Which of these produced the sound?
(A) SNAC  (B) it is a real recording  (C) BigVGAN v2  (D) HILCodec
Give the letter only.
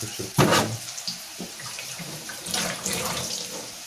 C